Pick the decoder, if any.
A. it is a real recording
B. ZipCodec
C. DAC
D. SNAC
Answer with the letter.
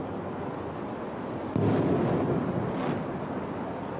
A